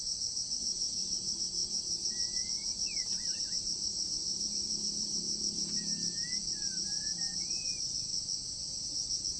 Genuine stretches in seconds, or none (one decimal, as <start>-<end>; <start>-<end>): 8.1-9.4